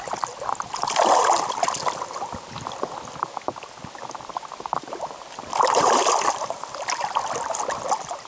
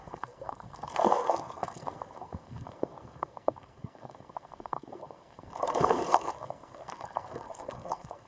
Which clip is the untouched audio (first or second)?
first